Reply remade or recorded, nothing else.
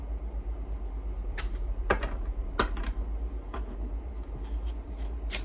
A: remade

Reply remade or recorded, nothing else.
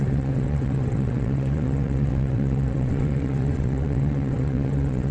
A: remade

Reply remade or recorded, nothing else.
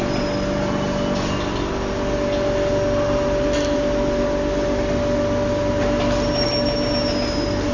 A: recorded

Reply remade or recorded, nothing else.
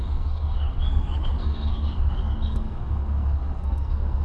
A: remade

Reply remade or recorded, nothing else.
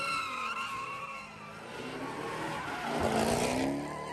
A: recorded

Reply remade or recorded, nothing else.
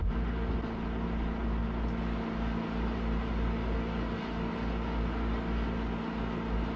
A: recorded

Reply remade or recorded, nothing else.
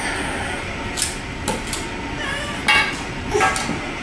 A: recorded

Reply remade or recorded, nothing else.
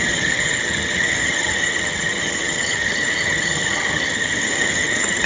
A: remade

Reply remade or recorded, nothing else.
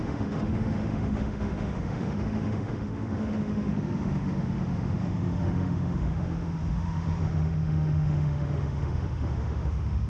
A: remade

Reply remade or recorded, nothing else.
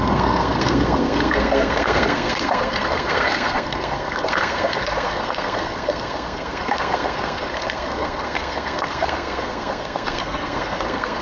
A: remade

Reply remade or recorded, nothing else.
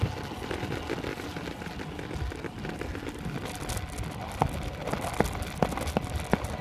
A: recorded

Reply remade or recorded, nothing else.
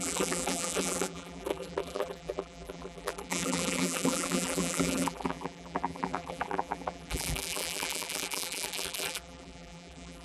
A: remade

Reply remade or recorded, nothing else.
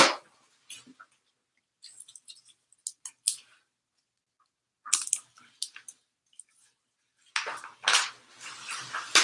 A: recorded